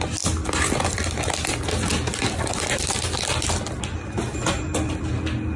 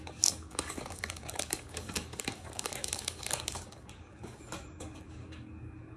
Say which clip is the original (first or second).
first